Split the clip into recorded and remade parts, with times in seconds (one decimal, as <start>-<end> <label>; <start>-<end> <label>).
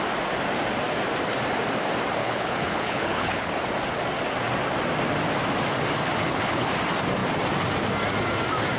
0.0-2.2 recorded; 2.2-3.5 remade; 3.5-6.2 recorded; 6.2-6.7 remade; 6.7-8.8 recorded